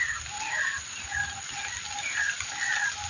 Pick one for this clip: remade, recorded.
recorded